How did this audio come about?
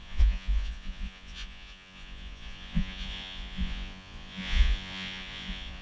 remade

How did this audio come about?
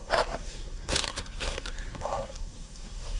remade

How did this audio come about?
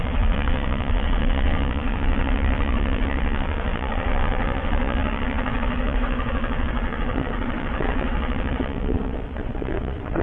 remade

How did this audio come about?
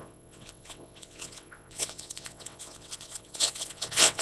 remade